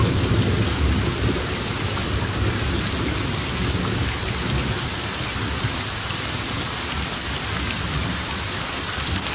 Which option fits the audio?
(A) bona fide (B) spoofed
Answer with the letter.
A